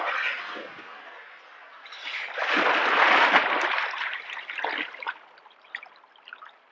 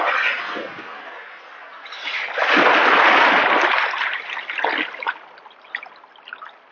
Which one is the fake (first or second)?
first